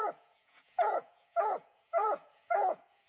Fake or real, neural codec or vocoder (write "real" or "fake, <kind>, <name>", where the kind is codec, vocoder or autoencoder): fake, vocoder, Vocos